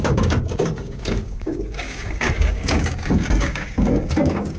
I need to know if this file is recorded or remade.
remade